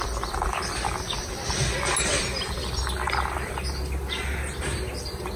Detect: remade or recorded recorded